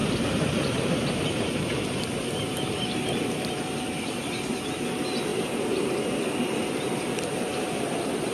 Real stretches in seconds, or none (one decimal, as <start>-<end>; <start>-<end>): 4.7-8.3